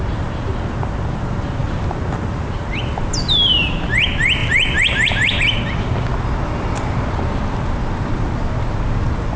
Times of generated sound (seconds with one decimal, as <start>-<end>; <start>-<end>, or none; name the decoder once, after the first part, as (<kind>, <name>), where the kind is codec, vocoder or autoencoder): 4.4-5.4 (vocoder, BigVGAN v2)